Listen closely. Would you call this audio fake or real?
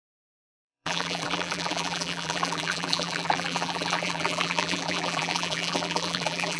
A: fake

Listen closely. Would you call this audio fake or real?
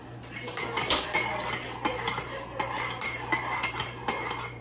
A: real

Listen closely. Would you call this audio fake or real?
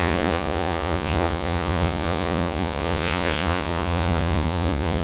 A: fake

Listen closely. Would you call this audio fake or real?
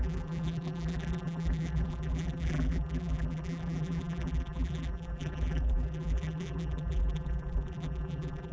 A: fake